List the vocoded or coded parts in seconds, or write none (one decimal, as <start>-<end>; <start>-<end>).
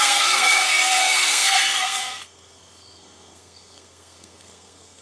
0.0-5.0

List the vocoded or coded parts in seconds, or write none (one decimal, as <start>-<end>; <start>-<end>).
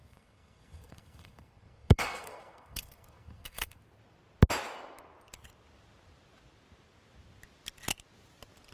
0.0-3.8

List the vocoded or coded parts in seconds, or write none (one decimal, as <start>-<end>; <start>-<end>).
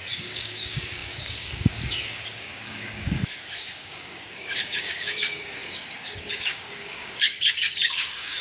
0.0-8.4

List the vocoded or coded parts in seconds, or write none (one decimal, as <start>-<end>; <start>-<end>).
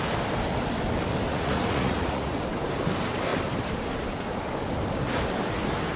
1.3-2.4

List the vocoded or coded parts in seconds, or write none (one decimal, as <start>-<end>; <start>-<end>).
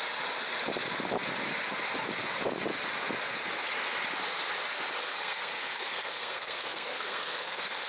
5.1-7.9